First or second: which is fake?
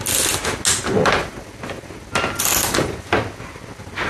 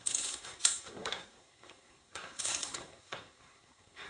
second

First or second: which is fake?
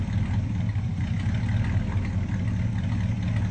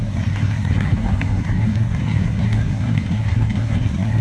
second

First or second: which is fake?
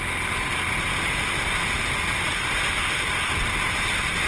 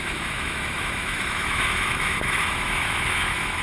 second